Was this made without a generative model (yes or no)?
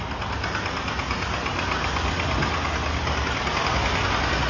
yes